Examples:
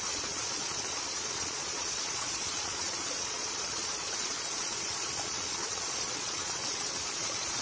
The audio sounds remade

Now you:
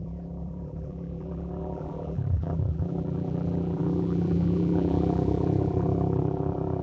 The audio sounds remade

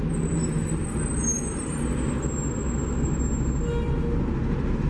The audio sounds recorded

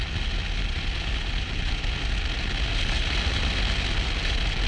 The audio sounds recorded